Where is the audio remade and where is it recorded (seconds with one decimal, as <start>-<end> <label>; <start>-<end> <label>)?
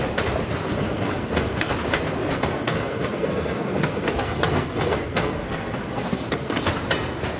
0.0-0.6 recorded; 0.6-1.7 remade; 1.7-2.3 recorded; 2.3-6.6 remade; 6.6-7.4 recorded